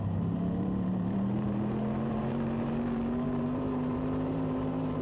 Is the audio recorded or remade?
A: remade